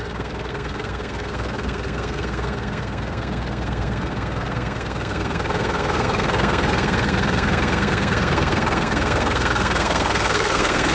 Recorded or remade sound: remade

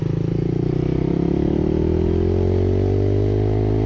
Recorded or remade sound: recorded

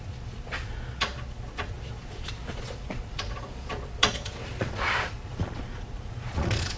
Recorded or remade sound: remade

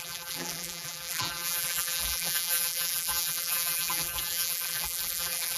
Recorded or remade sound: remade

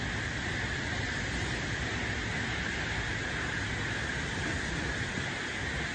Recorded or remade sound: recorded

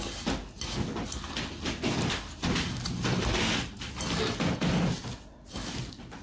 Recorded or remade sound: recorded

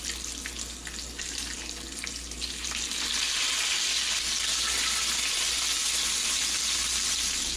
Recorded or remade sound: recorded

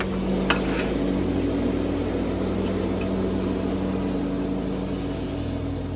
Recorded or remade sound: recorded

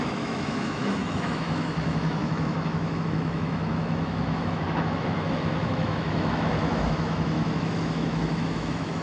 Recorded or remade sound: remade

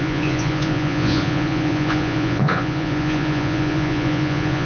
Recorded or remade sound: remade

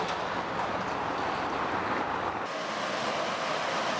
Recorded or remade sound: recorded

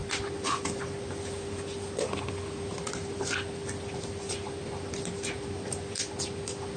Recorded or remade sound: recorded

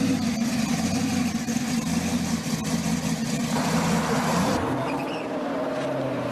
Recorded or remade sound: recorded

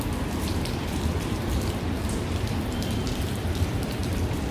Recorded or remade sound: remade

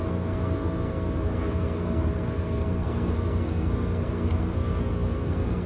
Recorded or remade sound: remade